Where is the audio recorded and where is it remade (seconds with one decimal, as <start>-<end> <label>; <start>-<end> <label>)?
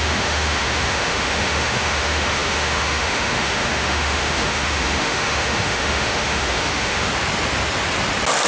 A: 0.0-7.1 remade; 7.1-8.5 recorded